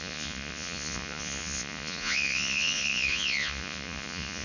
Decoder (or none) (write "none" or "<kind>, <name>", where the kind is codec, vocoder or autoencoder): vocoder, Vocos